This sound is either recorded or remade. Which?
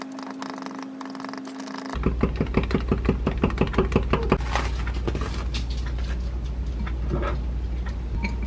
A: recorded